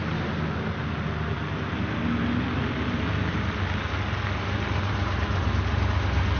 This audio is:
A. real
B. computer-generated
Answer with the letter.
A